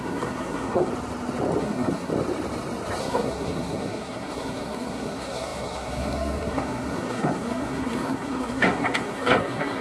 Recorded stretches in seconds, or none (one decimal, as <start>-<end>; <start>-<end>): 0.9-1.6; 2.1-3.0